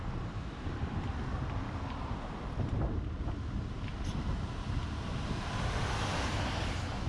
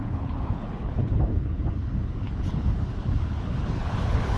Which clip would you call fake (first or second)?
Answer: second